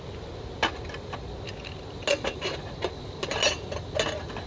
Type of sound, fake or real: real